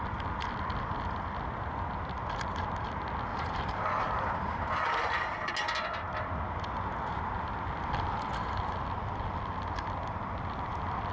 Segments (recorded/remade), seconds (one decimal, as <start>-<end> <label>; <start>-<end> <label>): 0.0-3.3 recorded; 3.3-5.5 remade; 5.5-11.1 recorded

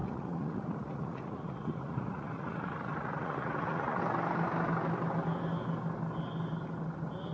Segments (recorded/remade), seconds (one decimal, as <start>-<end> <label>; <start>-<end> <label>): 0.0-4.0 remade; 4.0-7.3 recorded

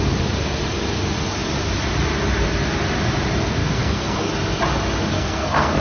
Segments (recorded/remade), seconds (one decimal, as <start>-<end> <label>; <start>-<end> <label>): 0.0-3.6 recorded; 3.6-4.3 remade; 4.3-5.1 recorded; 5.1-5.8 remade

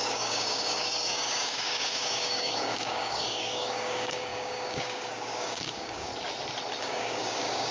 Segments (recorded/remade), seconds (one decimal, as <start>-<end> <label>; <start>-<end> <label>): 0.0-6.1 remade; 6.1-6.8 recorded; 6.8-7.7 remade

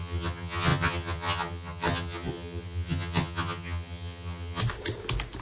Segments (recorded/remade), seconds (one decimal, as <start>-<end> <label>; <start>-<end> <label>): 0.0-4.6 remade; 4.6-5.4 recorded

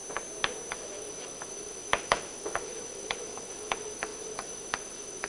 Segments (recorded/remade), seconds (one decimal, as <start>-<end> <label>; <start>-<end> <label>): 0.0-0.7 recorded; 0.7-5.3 remade

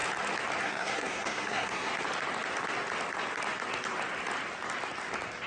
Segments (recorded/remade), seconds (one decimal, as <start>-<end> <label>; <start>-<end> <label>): 0.0-0.6 recorded; 0.6-1.9 remade; 1.9-5.5 recorded

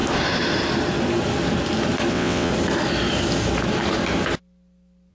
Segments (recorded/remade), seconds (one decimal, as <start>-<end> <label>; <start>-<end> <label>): 0.0-2.1 recorded; 2.1-2.5 remade; 2.5-5.1 recorded